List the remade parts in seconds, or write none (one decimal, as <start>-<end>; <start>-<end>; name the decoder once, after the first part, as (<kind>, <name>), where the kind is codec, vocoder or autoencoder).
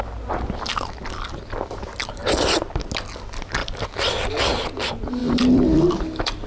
3.6-4.4 (vocoder, BigVGAN v2); 5.2-6.5